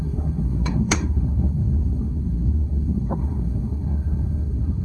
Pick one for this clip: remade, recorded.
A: remade